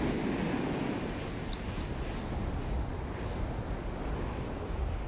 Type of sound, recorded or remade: recorded